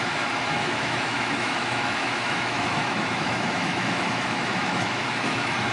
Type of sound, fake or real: fake